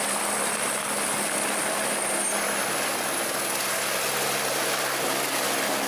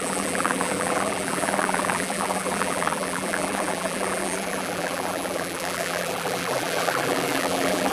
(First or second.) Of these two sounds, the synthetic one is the second